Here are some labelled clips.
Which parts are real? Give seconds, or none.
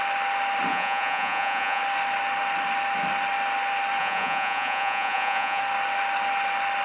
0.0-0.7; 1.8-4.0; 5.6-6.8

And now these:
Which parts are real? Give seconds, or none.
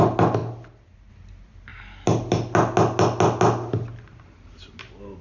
0.0-5.2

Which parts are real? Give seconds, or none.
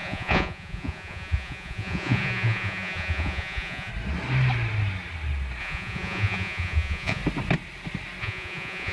3.9-5.6; 7.2-8.2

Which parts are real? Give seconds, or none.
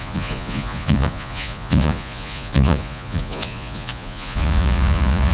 none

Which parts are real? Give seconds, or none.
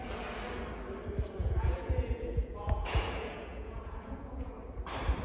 0.0-1.4; 4.5-5.2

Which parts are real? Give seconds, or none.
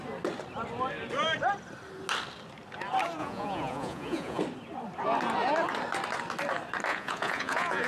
0.0-3.2; 4.4-6.9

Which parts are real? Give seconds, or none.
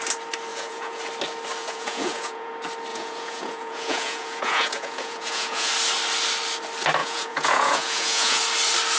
0.0-0.5; 1.0-1.6; 2.5-2.9; 5.7-7.0; 8.4-9.0